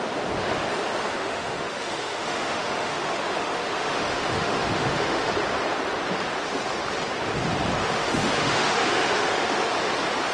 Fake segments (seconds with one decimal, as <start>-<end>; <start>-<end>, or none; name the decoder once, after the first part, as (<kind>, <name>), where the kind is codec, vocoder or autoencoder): 1.2-5.3 (autoencoder, DAC-VAE); 7.8-9.8